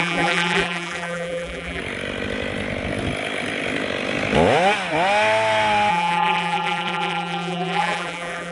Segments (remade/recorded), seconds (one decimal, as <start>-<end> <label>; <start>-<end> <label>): 0.0-1.8 remade; 1.8-5.9 recorded; 5.9-8.5 remade